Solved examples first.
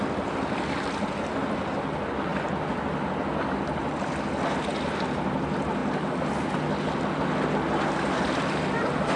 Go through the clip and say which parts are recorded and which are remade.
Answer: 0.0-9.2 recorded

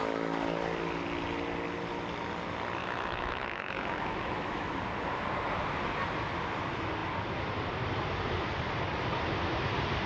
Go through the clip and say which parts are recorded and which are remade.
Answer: 0.0-2.8 recorded; 2.8-4.8 remade; 4.8-10.1 recorded

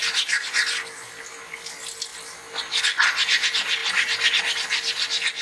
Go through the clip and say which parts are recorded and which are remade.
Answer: 0.0-5.4 recorded

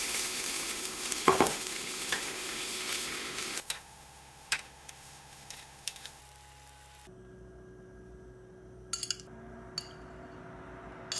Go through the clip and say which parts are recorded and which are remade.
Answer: 0.0-6.2 remade; 6.2-11.2 recorded

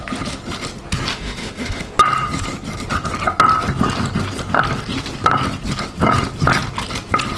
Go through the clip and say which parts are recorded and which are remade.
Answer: 0.0-1.1 recorded; 1.1-1.9 remade; 1.9-7.4 recorded

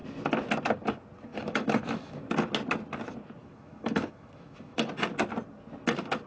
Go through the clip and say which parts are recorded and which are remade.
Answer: 0.0-1.3 recorded; 1.3-2.2 remade; 2.2-3.4 recorded; 3.4-4.9 remade; 4.9-6.3 recorded

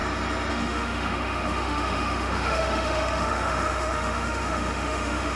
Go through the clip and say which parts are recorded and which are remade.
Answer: 0.0-0.5 recorded; 0.5-5.4 remade